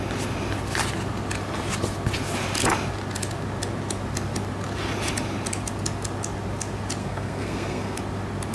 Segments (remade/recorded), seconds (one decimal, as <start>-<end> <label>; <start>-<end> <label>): 0.0-7.0 recorded; 7.0-8.0 remade; 8.0-8.5 recorded